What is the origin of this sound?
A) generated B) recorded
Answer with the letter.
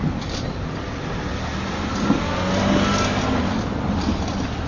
B